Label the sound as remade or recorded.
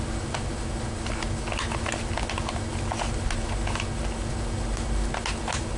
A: recorded